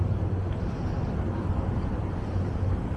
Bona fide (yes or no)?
yes